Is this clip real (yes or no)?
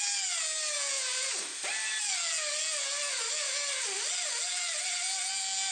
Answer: yes